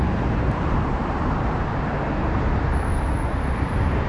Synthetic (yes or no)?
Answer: yes